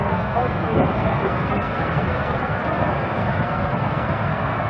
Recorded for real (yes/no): no